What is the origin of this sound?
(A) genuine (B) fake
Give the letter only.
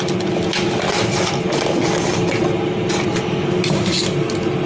A